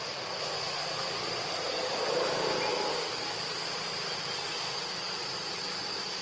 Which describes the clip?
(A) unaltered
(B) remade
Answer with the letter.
A